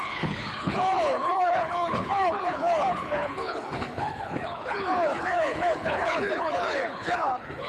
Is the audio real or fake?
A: fake